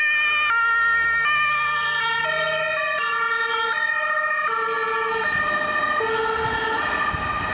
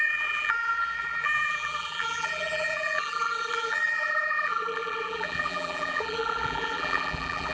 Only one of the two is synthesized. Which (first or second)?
second